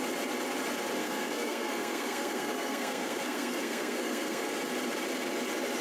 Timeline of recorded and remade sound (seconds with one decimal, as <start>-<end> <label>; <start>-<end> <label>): 0.0-1.0 recorded; 1.0-4.5 remade; 4.5-5.8 recorded